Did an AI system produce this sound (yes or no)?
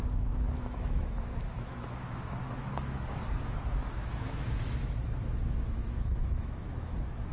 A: yes